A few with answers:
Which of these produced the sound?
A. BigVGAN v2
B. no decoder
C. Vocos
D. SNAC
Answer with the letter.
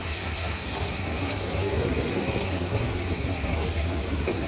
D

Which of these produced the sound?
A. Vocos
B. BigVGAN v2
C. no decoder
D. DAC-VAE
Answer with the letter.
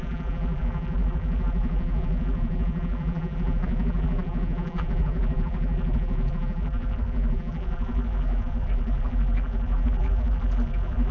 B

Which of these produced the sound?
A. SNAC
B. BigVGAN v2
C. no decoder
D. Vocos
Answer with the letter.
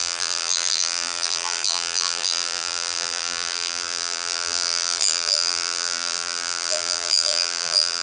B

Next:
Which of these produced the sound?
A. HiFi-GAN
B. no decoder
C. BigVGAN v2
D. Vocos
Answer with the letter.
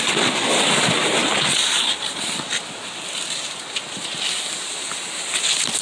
B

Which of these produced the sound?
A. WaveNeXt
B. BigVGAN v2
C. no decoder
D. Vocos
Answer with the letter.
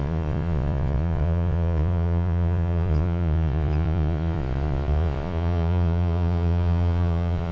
D